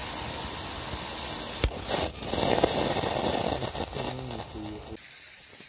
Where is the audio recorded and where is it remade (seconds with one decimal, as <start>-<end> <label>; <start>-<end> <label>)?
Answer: 0.0-5.7 recorded